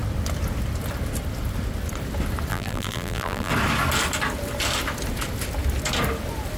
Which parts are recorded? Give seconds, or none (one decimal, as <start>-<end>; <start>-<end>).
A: 0.0-2.5; 3.5-6.6